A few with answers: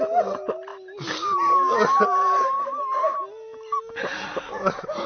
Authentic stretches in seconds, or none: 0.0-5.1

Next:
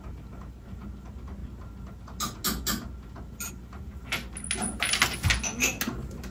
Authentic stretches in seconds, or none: 0.0-6.3

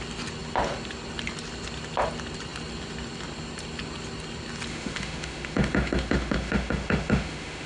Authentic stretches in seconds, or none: 0.0-4.7

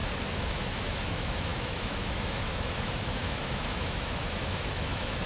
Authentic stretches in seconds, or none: 0.0-0.5

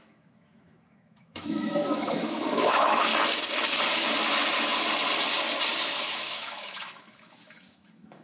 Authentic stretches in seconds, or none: 3.1-6.1

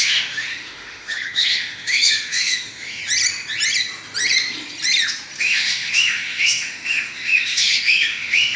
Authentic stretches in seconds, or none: 3.0-5.4

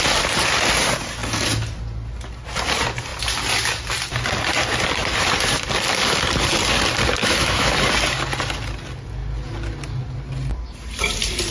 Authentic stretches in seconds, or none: 0.0-7.2; 7.7-11.5